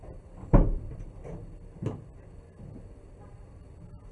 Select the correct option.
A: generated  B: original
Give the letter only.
B